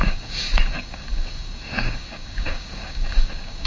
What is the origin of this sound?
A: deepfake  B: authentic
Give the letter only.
A